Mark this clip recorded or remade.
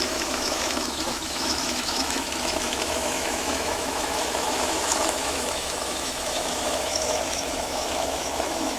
remade